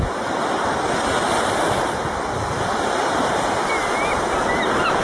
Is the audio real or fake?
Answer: real